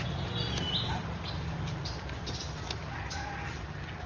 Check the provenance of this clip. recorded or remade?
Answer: recorded